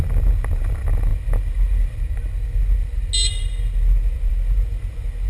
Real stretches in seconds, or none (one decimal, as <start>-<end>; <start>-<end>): 0.0-5.3